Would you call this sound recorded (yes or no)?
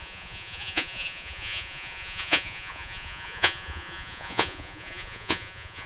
no